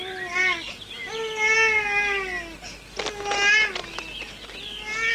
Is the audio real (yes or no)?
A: yes